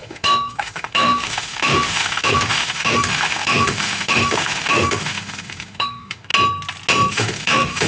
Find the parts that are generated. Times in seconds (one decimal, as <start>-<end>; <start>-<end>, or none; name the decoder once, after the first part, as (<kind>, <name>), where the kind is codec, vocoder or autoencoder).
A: 0.0-6.3 (autoencoder, DAC-VAE); 7.1-7.9